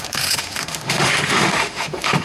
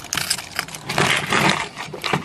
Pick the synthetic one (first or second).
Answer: first